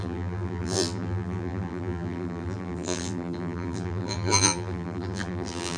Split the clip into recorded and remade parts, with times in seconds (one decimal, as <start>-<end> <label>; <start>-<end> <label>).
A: 0.0-5.8 remade